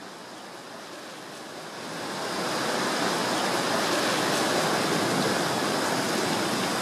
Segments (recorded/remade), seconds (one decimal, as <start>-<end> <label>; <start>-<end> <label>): 0.0-6.8 recorded